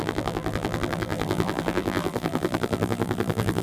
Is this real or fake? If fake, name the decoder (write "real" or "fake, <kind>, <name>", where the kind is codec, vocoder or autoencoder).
fake, vocoder, BigVGAN v2